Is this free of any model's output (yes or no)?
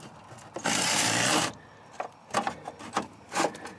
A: yes